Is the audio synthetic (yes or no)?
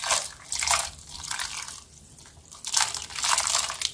no